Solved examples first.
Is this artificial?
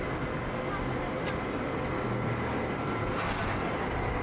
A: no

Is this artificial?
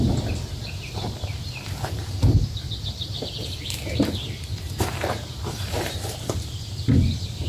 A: yes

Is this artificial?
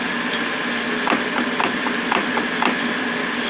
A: no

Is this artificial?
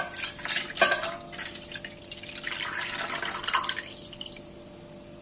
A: no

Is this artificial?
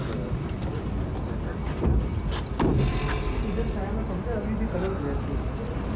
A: no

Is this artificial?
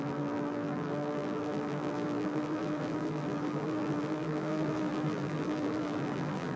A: yes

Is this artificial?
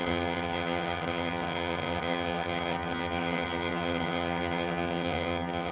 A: yes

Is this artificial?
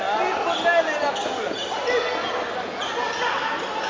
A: no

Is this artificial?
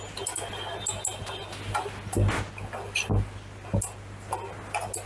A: no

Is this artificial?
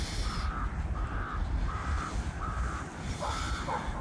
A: no